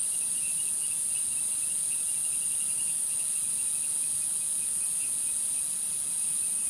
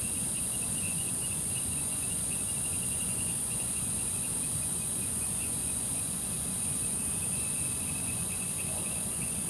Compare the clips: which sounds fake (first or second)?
second